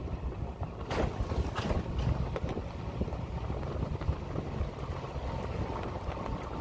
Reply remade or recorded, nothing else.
recorded